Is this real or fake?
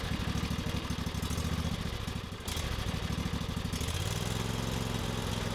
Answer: real